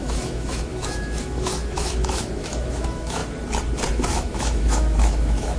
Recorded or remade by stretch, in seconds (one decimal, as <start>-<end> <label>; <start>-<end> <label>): 0.0-3.2 remade; 3.2-3.9 recorded; 3.9-5.6 remade